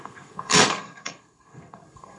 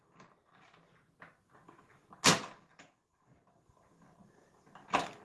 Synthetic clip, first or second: first